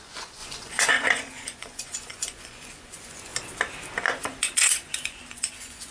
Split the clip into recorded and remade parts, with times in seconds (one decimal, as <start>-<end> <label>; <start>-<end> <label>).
0.0-3.3 remade; 3.3-4.2 recorded; 4.2-5.9 remade